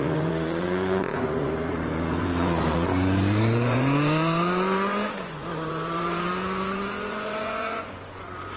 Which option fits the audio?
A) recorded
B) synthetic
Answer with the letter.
B